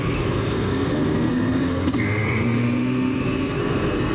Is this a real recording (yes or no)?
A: no